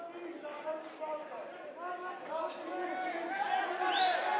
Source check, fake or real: real